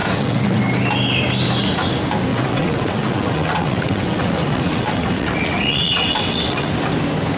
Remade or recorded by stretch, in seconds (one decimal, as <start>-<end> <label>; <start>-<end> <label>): 0.0-0.6 remade; 0.6-2.3 recorded; 2.3-6.7 remade; 6.7-7.4 recorded